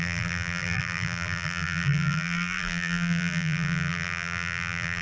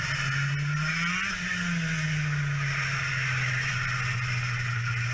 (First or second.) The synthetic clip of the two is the first